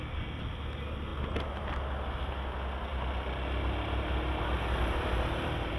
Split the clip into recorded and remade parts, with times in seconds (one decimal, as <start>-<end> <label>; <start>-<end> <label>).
0.0-5.8 recorded